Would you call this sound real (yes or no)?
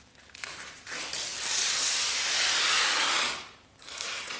yes